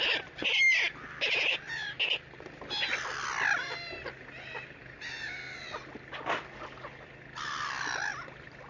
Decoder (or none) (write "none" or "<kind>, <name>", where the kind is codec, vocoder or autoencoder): none